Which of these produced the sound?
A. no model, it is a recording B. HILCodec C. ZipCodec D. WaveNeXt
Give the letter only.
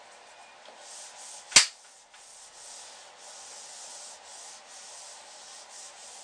A